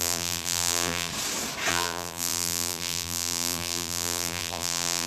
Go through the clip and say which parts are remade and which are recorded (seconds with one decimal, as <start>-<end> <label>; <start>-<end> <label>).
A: 0.0-1.1 remade; 1.1-1.7 recorded; 1.7-5.1 remade